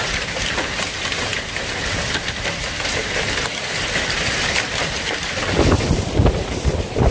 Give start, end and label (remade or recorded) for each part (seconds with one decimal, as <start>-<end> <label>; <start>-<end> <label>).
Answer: 0.0-7.1 recorded